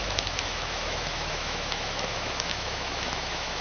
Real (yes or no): no